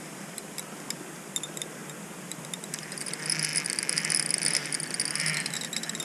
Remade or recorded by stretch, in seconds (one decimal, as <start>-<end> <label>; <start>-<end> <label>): 0.0-6.0 recorded